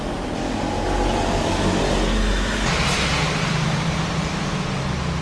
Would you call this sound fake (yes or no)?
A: no